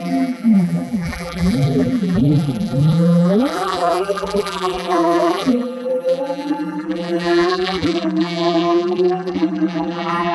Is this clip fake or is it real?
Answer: fake